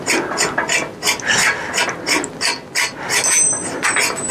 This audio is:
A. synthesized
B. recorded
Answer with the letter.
B